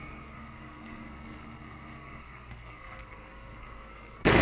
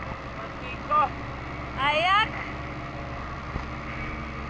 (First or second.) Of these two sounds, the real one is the second